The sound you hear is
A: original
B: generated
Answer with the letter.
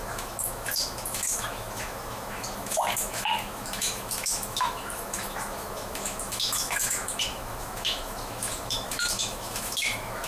B